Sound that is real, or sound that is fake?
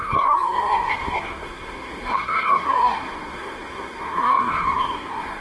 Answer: fake